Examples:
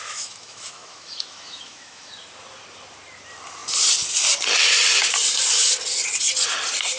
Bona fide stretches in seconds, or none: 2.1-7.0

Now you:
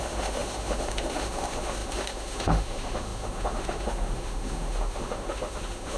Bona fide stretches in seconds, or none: none

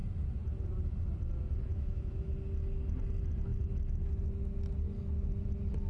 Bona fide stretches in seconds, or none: 0.0-1.7; 2.3-5.9